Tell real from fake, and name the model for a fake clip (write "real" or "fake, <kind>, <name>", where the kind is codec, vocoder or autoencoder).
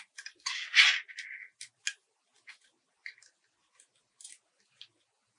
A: real